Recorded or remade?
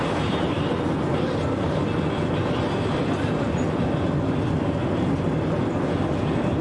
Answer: recorded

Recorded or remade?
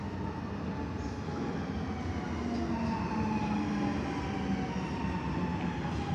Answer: recorded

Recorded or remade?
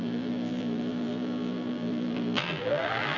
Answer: remade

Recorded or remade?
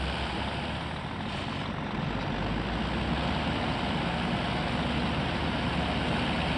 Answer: recorded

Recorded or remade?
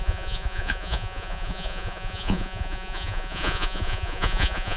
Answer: remade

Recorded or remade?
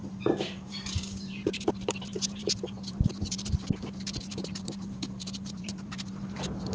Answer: remade